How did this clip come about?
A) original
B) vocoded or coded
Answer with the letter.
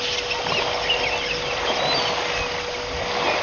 A